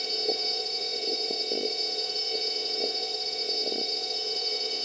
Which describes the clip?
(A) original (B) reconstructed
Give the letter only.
B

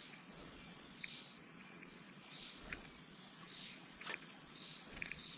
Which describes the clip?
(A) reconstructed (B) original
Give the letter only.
A